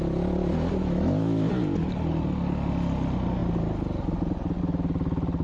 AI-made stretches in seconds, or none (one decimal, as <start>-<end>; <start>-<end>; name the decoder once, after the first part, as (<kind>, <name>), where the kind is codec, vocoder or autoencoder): 0.8-1.5 (autoencoder, DAC-VAE)